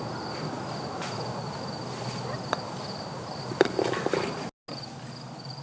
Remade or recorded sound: recorded